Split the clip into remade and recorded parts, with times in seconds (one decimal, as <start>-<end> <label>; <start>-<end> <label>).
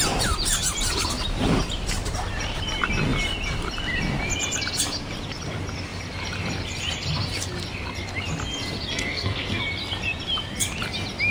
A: 0.0-8.9 recorded; 8.9-9.6 remade; 9.6-11.3 recorded